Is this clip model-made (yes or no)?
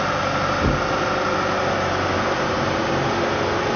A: no